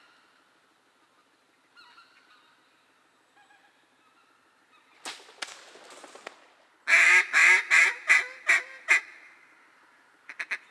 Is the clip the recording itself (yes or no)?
yes